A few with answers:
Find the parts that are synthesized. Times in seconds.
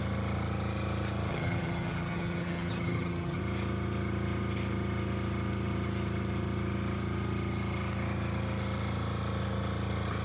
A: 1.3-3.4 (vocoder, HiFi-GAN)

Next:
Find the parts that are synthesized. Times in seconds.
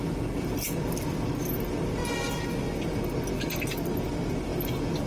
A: none